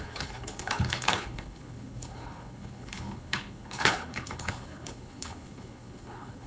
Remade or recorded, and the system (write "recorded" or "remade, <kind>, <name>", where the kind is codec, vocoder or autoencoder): remade, codec, HILCodec